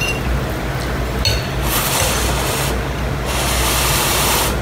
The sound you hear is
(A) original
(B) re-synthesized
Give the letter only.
A